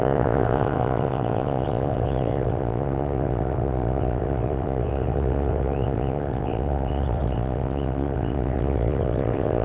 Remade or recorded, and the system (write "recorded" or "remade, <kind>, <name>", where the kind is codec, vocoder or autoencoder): remade, vocoder, WaveNeXt